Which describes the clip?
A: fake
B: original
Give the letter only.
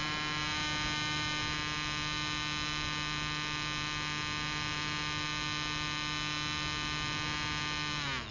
B